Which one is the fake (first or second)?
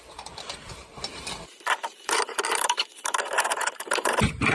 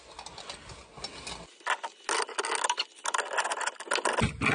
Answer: first